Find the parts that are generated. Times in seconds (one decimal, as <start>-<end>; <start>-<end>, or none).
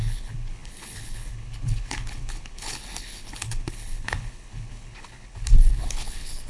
0.0-6.5